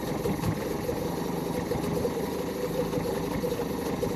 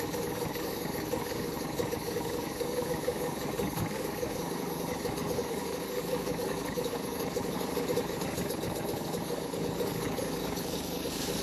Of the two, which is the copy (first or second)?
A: second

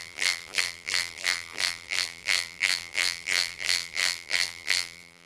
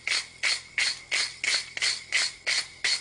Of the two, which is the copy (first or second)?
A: first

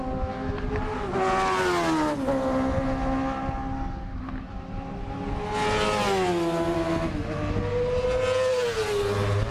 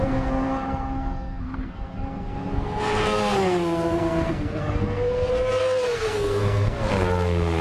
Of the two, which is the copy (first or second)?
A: second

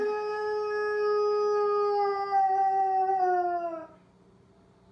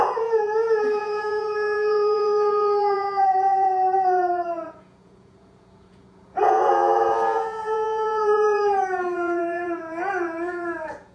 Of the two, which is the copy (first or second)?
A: second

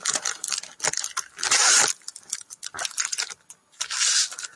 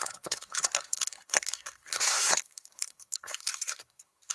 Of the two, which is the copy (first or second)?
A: second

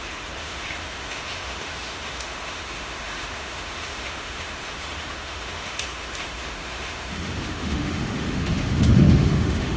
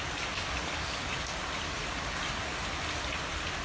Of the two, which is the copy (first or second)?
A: first